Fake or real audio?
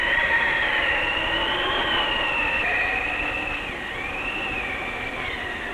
real